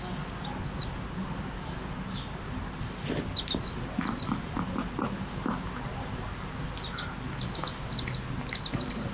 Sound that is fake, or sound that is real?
real